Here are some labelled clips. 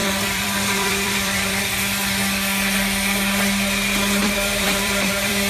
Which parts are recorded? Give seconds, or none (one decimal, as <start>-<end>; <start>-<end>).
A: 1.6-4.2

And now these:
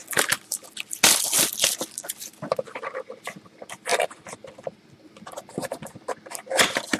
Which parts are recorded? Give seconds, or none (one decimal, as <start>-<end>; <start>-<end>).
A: 0.0-3.9; 6.6-7.0

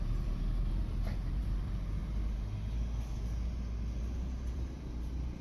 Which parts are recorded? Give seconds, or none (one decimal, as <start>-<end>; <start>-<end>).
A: 2.0-4.0

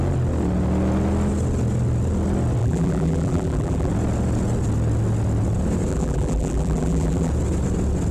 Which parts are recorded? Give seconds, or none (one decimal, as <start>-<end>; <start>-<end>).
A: 0.0-2.6; 3.9-5.9; 7.3-8.1

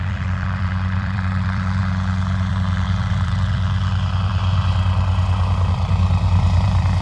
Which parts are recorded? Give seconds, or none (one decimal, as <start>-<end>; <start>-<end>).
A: 1.8-2.5; 4.4-5.7